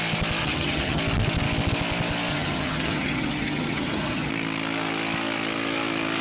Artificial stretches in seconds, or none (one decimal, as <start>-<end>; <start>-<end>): 0.4-1.0; 2.3-4.3